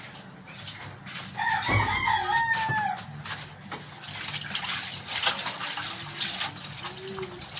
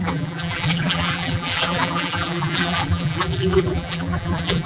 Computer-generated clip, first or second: second